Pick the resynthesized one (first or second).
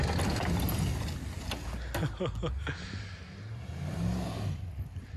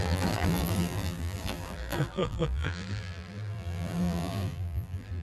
second